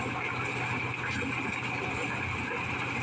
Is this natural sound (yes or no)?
yes